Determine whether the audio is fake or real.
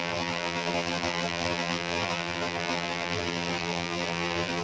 fake